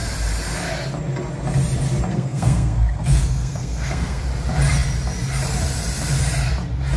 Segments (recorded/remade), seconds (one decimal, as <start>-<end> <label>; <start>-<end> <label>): 0.0-2.1 recorded; 2.1-4.2 remade; 4.2-7.0 recorded